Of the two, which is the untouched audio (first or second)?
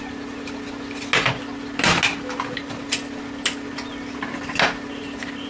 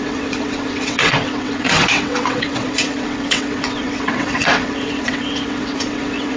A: first